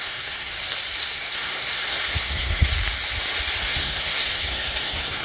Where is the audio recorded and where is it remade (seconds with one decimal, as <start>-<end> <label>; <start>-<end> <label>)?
0.0-0.5 remade; 0.5-1.0 recorded; 1.0-2.7 remade; 2.7-3.6 recorded; 3.6-5.2 remade